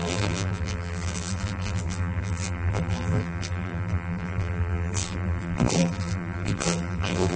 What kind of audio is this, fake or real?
fake